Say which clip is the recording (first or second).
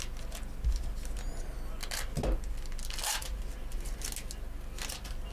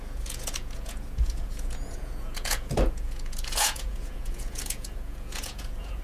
first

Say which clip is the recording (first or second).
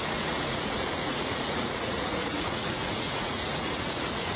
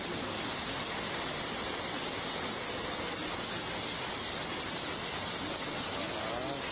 second